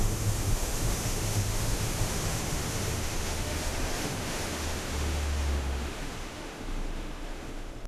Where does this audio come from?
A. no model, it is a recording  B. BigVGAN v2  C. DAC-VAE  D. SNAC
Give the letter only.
C